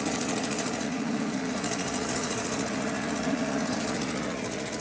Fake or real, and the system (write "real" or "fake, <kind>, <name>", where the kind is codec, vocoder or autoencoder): fake, vocoder, Vocos